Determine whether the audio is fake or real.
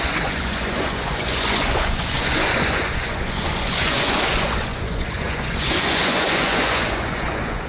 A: fake